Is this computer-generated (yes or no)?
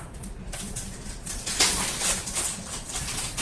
yes